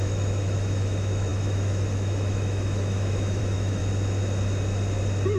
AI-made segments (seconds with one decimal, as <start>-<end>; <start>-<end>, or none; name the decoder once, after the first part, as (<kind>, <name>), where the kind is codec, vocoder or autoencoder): 0.0-3.8 (autoencoder, DAC-VAE)